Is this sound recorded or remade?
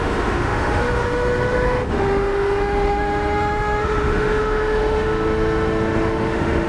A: remade